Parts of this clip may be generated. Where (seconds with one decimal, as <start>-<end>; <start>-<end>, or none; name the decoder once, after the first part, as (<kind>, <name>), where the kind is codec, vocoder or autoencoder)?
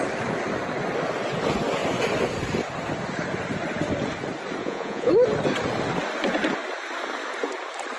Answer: 4.6-5.1 (vocoder, Vocos)